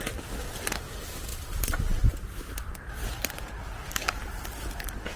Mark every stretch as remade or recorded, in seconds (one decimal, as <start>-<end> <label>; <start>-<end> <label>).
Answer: 0.0-1.3 recorded; 1.3-4.3 remade; 4.3-5.2 recorded